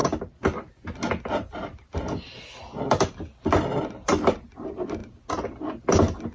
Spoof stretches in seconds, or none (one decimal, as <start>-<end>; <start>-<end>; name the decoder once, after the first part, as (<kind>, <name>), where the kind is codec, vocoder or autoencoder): none

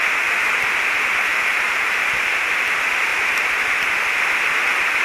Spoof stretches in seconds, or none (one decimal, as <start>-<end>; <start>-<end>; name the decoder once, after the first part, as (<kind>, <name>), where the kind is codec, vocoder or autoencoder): 1.3-1.9 (vocoder, BigVGAN v2)

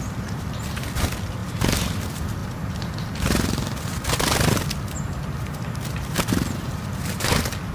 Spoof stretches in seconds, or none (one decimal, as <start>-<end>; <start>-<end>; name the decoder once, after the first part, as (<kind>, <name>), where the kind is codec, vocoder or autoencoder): 0.0-7.7 (vocoder, BigVGAN v2)